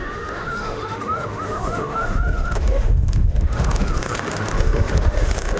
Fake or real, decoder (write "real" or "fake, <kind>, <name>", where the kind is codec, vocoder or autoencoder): fake, autoencoder, DAC-VAE